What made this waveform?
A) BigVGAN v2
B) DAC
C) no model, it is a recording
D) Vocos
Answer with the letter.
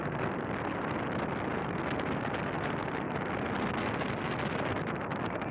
C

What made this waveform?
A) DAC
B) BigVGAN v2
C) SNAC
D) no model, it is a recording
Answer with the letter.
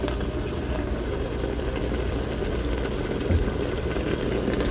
D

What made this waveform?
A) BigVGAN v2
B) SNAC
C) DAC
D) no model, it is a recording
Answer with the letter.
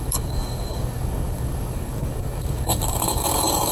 C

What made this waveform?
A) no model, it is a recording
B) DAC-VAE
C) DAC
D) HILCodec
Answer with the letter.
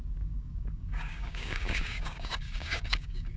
C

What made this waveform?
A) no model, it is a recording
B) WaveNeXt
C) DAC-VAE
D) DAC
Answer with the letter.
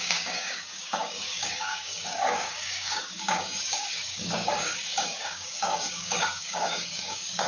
D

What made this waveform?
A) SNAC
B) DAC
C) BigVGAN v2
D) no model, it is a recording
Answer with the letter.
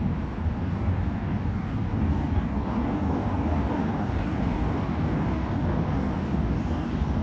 B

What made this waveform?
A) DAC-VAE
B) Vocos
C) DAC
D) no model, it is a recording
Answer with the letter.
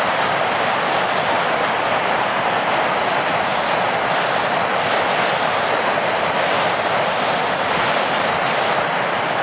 D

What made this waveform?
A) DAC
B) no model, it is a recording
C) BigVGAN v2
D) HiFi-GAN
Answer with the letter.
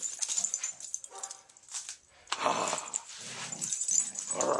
B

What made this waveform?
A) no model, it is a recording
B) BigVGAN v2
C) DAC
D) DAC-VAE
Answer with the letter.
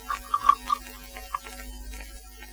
A